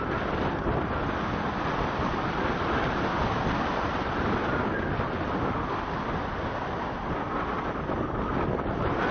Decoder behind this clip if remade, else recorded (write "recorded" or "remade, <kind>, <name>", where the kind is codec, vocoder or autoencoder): recorded